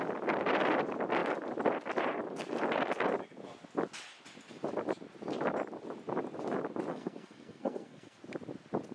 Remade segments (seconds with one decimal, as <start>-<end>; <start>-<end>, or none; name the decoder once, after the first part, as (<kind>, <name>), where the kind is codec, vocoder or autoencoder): 6.9-8.2 (codec, SNAC)